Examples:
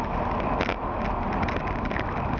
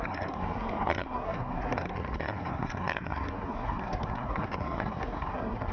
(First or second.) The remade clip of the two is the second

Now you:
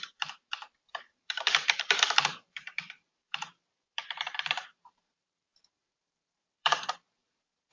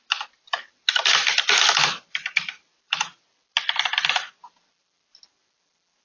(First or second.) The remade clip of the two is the first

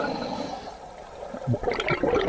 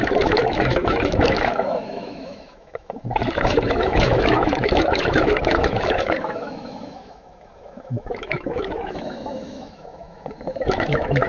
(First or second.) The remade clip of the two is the second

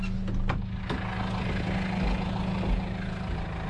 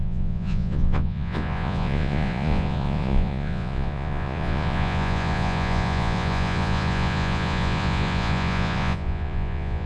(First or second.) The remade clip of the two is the second